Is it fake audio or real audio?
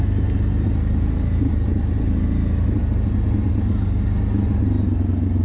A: real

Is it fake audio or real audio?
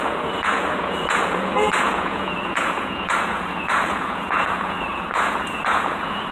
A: fake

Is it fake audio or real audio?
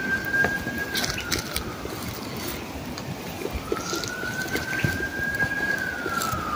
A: real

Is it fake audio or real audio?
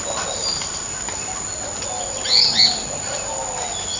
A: real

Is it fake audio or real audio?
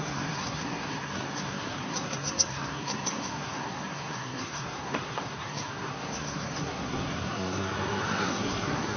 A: fake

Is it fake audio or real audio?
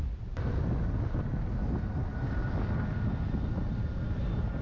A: real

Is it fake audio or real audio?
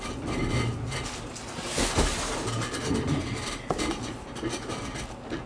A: real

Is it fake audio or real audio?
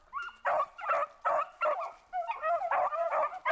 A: real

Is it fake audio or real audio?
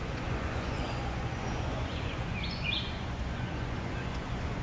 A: fake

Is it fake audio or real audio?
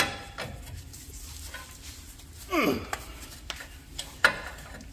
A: real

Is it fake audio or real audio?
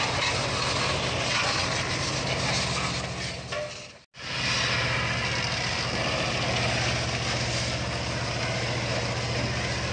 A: real